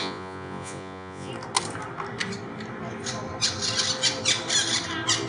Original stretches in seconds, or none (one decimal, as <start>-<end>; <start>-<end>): 1.3-5.3